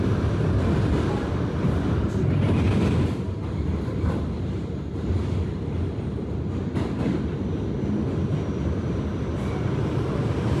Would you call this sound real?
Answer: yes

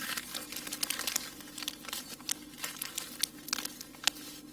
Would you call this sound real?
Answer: yes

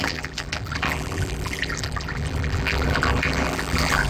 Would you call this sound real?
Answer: no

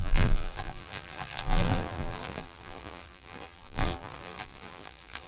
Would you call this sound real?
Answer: no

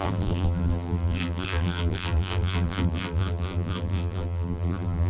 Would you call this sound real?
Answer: no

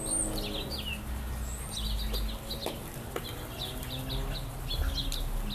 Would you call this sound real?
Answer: yes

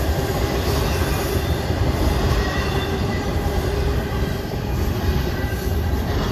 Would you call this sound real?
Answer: no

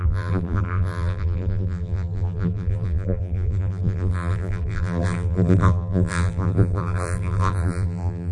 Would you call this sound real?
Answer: no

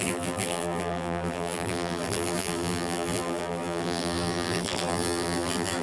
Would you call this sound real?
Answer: no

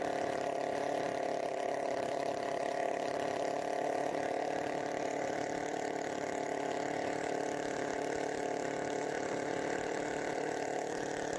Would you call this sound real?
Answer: no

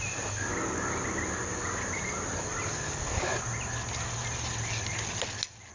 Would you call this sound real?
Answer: yes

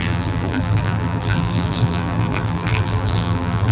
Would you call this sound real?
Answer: no